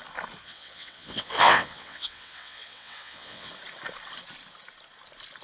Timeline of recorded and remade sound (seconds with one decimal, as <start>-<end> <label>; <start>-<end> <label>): 0.0-0.4 recorded; 0.4-3.5 remade; 3.5-5.4 recorded